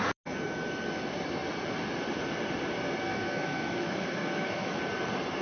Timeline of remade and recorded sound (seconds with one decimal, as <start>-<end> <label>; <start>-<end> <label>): 0.0-3.1 recorded; 3.1-4.8 remade; 4.8-5.4 recorded

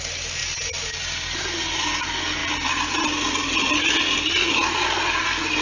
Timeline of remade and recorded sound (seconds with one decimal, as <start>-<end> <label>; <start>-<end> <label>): 0.0-5.6 recorded